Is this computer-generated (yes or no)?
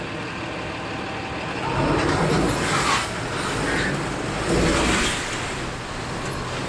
no